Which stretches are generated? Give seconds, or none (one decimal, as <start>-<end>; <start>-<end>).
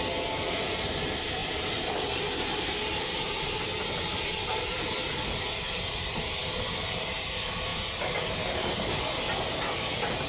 1.4-3.6; 4.1-7.0; 7.7-9.2